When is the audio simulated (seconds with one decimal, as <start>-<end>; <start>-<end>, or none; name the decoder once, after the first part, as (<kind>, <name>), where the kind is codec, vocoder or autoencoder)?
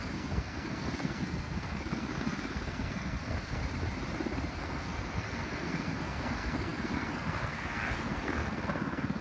0.0-3.6 (codec, SNAC); 4.5-9.2